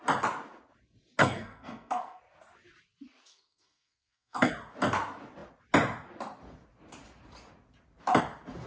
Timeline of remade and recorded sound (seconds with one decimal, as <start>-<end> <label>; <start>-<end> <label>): 0.0-1.2 recorded; 1.2-2.2 remade; 2.2-3.3 recorded; 3.3-4.5 remade; 4.5-8.7 recorded